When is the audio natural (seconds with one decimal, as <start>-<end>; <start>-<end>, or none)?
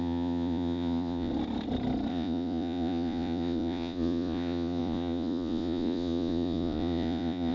1.3-2.1